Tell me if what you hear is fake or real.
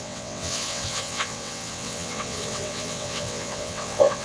fake